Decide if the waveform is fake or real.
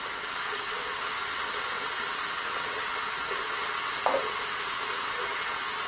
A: fake